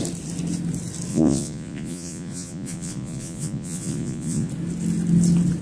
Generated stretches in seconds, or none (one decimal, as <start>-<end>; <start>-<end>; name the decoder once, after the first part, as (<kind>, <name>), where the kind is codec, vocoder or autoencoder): 1.1-4.5 (vocoder, Vocos)